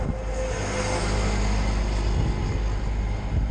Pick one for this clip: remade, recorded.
recorded